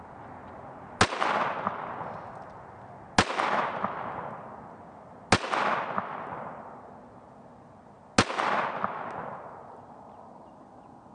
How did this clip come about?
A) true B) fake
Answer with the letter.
A